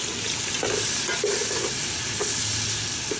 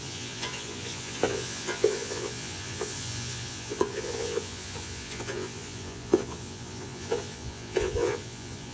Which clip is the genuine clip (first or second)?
first